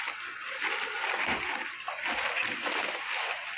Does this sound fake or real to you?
real